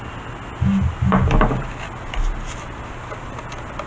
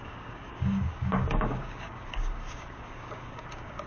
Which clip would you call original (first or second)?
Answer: first